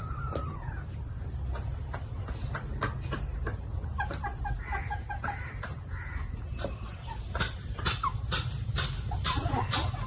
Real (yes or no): no